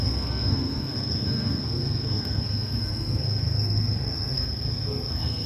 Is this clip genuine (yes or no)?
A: no